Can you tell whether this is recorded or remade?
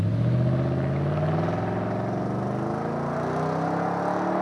recorded